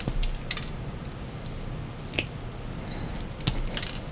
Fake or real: real